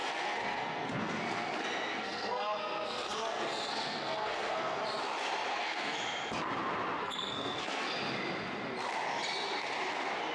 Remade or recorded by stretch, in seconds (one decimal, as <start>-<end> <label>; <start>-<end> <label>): 0.0-1.5 remade; 1.5-1.9 recorded; 1.9-4.8 remade; 4.8-5.5 recorded; 5.5-6.0 remade; 6.0-7.0 recorded; 7.0-7.9 remade; 7.9-10.3 recorded